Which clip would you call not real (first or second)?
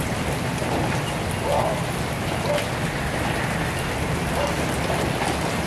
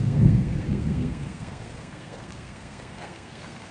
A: second